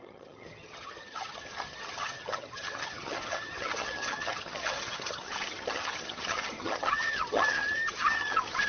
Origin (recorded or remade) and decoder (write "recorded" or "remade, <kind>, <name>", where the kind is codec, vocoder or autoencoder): remade, vocoder, HiFi-GAN